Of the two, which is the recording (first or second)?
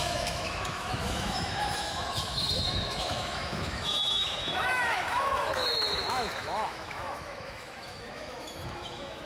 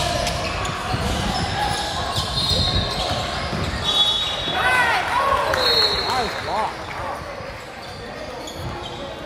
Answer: second